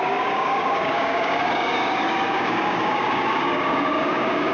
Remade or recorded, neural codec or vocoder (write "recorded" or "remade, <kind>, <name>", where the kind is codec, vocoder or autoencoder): remade, codec, DAC